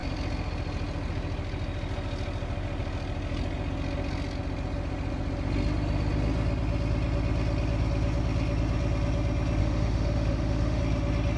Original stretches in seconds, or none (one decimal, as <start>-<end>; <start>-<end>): 0.0-9.6; 10.8-11.4